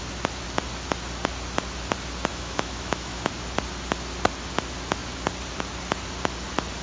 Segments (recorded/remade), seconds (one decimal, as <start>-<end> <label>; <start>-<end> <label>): 0.0-2.3 recorded; 2.3-3.3 remade; 3.3-6.8 recorded